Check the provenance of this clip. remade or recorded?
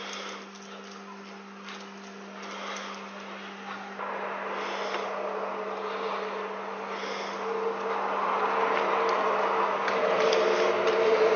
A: recorded